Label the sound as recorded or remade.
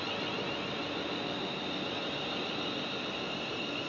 recorded